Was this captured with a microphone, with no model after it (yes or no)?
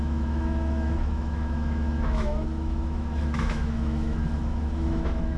no